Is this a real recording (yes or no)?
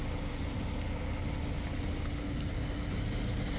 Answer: yes